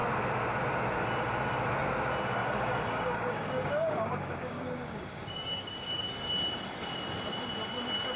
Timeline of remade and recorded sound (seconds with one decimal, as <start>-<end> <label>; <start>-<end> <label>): 0.0-2.4 recorded; 2.4-6.3 remade; 6.3-8.2 recorded

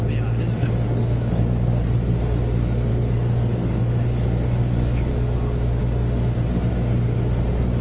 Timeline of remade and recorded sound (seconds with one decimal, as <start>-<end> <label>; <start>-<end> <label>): 0.0-0.6 recorded; 0.6-1.4 remade; 1.4-2.9 recorded; 2.9-5.1 remade; 5.1-7.8 recorded

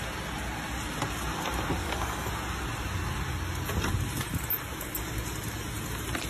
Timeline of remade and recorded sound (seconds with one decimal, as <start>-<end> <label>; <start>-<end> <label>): 0.0-1.8 recorded; 1.8-2.3 remade; 2.3-6.3 recorded

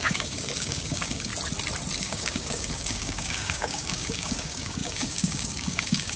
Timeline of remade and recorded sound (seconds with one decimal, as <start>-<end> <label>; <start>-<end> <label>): 0.0-1.3 remade; 1.3-2.0 recorded; 2.0-6.2 remade

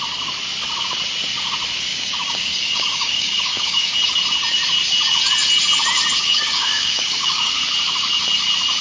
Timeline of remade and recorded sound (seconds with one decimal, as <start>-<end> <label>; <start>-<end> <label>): 0.0-1.9 recorded; 1.9-4.2 remade; 4.2-6.2 recorded; 6.2-7.6 remade; 7.6-8.8 recorded

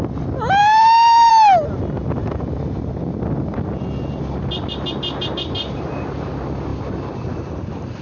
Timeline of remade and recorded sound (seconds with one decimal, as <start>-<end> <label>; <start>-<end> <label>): 0.0-0.6 recorded; 0.6-1.3 remade; 1.3-8.0 recorded